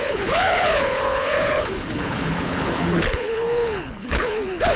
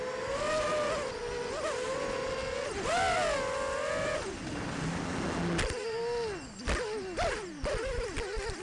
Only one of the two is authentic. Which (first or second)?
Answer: second